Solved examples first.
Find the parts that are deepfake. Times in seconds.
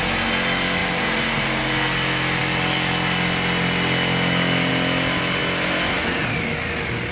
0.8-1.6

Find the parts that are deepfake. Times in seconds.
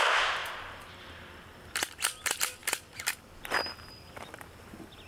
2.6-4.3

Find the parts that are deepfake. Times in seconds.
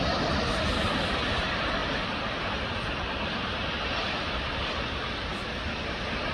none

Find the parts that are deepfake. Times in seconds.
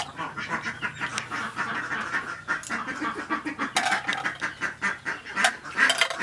none